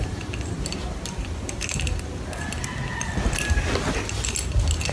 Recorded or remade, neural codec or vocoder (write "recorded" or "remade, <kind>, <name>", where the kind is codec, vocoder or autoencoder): recorded